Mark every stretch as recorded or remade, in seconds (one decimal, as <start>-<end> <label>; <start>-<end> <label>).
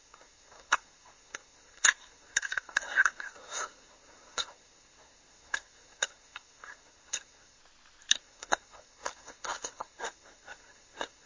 0.0-7.6 remade; 7.6-8.2 recorded; 8.2-11.3 remade